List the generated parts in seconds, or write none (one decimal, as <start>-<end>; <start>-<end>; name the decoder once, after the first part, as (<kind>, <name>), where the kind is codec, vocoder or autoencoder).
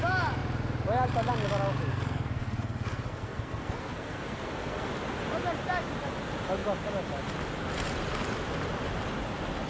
1.9-4.9 (codec, SNAC)